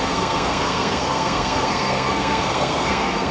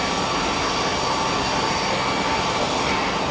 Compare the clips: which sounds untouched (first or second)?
second